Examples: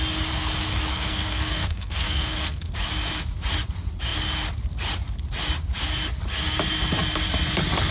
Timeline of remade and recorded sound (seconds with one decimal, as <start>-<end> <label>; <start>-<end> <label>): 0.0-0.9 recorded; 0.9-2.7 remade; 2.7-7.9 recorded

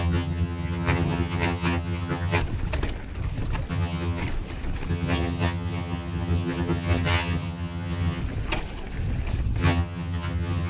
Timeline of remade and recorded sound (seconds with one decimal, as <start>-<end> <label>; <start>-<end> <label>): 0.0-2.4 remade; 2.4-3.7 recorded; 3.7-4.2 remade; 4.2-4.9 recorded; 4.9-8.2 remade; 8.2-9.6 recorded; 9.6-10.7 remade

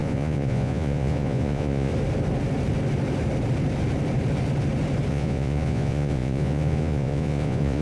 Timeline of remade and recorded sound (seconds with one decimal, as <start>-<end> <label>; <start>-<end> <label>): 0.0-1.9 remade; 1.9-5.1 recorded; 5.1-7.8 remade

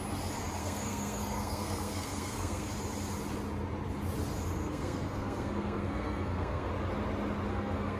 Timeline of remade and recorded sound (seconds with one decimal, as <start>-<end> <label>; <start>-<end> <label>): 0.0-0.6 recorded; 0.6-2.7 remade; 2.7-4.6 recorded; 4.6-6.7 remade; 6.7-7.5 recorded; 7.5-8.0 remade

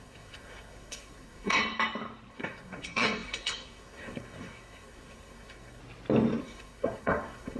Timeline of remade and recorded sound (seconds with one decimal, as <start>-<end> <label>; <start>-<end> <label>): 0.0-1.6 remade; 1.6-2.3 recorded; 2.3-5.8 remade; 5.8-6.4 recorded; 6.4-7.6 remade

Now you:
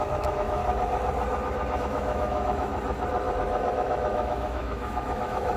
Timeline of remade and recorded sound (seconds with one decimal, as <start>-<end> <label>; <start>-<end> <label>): 0.0-0.6 remade; 0.6-1.8 recorded; 1.8-2.7 remade; 2.7-3.7 recorded; 3.7-5.6 remade

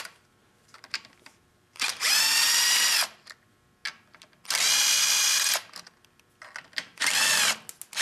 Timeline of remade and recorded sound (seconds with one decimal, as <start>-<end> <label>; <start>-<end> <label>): 0.0-0.4 recorded; 0.4-2.1 remade; 2.1-8.0 recorded

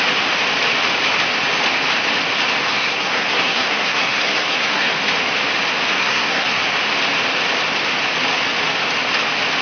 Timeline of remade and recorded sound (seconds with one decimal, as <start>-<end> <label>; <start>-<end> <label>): 0.0-2.7 recorded; 2.7-4.9 remade; 4.9-6.0 recorded; 6.0-6.6 remade; 6.6-9.6 recorded